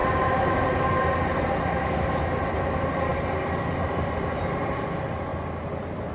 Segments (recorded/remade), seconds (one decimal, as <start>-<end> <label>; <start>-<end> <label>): 0.0-1.5 remade; 1.5-5.3 recorded; 5.3-6.1 remade